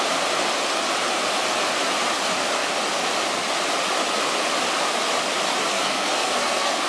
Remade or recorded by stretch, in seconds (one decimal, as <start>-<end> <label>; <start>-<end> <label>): 0.0-5.7 recorded; 5.7-6.9 remade